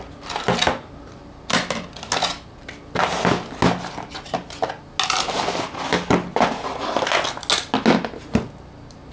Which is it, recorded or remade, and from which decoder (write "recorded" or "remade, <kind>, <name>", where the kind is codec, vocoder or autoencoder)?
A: recorded